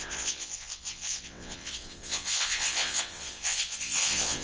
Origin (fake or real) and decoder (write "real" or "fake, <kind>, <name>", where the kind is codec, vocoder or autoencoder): fake, vocoder, WaveNeXt